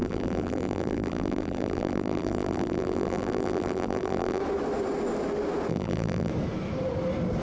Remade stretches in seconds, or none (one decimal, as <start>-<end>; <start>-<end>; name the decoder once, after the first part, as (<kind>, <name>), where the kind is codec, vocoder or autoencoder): 0.0-4.4 (vocoder, BigVGAN v2); 5.7-6.3